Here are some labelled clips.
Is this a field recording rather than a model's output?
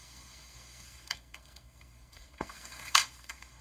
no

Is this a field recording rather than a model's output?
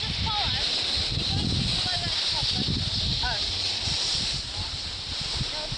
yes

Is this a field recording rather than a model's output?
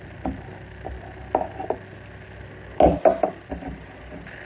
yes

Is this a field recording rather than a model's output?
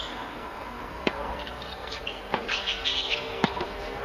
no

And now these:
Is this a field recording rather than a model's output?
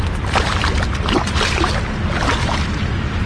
yes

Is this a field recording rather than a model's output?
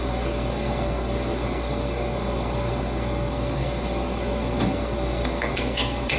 no